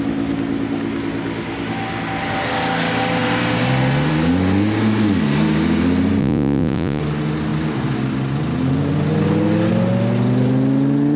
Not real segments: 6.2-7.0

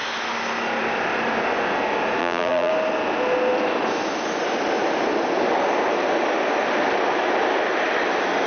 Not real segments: 2.2-2.7

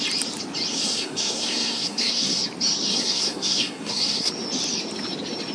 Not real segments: 0.7-2.4; 2.9-4.3

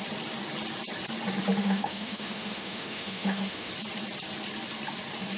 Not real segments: 1.6-3.7

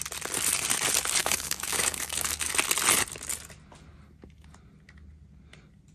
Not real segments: 1.2-2.5

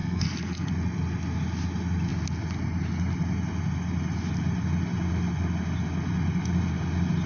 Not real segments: 0.0-0.7

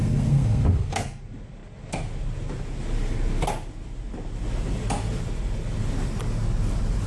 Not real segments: 0.0-1.2